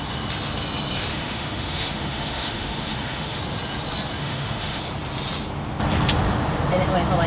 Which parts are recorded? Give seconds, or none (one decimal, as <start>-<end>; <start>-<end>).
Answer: 0.0-1.1; 3.4-4.2; 4.8-7.3